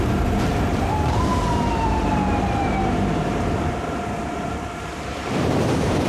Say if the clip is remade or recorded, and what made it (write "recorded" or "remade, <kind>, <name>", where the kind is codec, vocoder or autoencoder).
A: remade, vocoder, BigVGAN v2